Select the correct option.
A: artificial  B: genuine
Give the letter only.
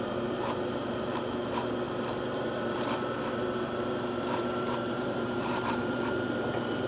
A